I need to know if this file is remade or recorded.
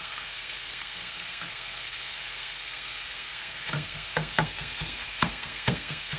remade